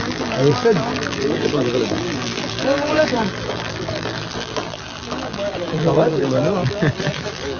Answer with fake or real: fake